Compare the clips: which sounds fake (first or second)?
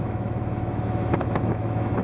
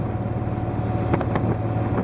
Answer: first